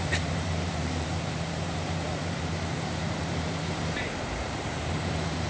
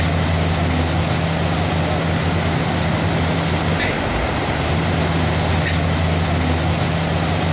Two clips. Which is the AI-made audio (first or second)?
first